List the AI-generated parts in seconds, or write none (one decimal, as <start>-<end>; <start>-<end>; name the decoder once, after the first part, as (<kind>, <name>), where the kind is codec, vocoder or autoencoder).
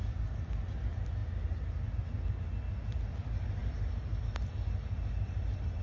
none